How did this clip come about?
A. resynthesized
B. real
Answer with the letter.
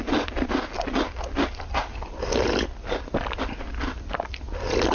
B